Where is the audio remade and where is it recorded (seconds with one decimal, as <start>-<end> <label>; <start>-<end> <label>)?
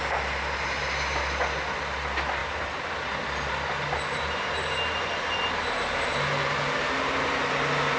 0.0-2.4 recorded; 2.4-3.0 remade; 3.0-8.0 recorded